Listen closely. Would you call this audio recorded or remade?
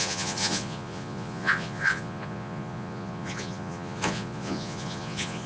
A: remade